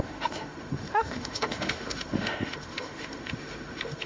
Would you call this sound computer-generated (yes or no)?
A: yes